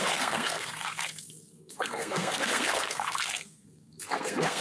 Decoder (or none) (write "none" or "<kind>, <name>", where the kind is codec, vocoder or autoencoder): codec, SNAC